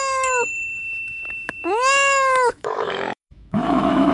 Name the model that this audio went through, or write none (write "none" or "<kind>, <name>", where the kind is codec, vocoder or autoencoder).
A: autoencoder, DAC-VAE